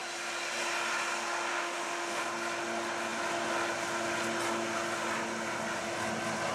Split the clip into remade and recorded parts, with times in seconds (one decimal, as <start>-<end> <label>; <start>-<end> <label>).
0.0-1.5 recorded; 1.5-2.2 remade; 2.2-6.5 recorded